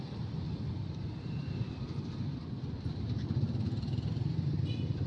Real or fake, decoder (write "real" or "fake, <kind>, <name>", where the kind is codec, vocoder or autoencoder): real